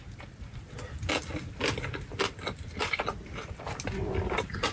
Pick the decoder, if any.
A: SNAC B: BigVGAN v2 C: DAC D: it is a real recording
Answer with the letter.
D